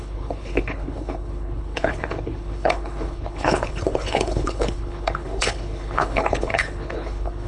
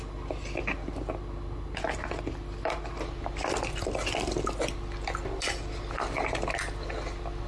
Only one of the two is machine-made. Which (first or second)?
first